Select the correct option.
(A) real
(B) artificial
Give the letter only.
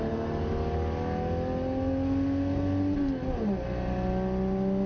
A